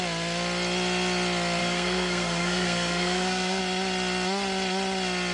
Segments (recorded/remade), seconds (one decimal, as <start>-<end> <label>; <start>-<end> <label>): 0.0-1.6 recorded; 1.6-3.6 remade; 3.6-5.3 recorded